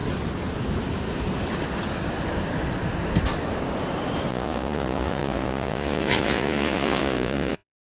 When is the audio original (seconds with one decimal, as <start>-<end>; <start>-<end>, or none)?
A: 0.0-4.3